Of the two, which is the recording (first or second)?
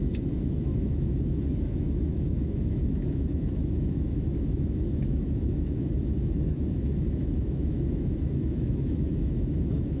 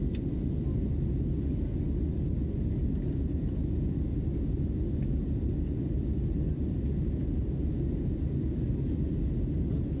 second